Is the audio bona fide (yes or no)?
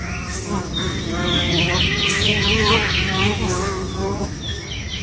no